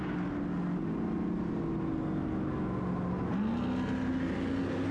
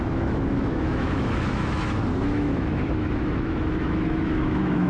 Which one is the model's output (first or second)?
second